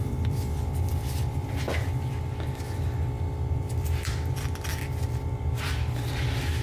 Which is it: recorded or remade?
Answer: recorded